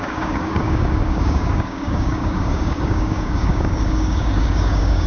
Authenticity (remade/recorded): remade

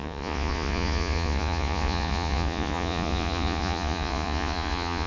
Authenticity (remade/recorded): remade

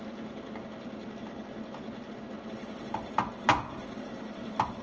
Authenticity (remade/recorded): recorded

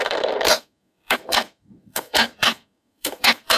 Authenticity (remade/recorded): remade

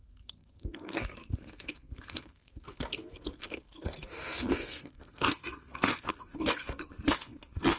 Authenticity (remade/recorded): remade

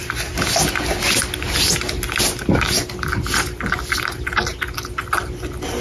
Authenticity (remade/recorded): recorded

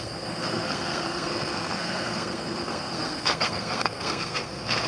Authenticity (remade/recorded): remade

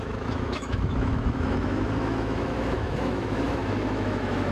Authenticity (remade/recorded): remade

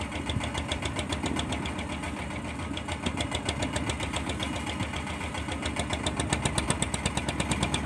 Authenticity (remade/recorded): recorded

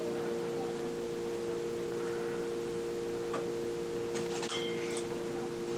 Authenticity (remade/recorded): recorded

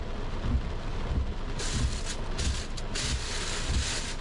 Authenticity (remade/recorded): recorded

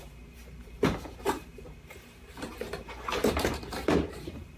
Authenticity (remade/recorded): remade